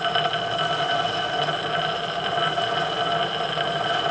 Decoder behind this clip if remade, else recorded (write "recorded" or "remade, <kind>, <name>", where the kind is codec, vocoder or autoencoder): recorded